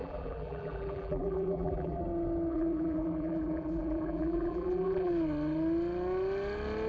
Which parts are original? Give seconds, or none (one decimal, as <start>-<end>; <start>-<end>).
2.0-2.5; 5.1-6.9